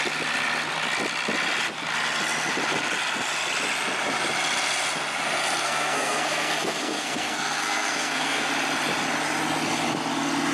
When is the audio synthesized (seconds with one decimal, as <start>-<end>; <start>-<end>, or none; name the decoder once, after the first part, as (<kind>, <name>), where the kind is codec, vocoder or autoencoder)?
5.6-8.5 (codec, SNAC)